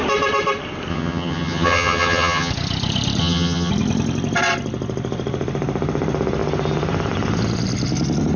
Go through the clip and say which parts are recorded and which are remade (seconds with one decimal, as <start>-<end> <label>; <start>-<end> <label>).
0.0-0.9 recorded; 0.9-2.5 remade; 2.5-3.2 recorded; 3.2-3.7 remade; 3.7-8.4 recorded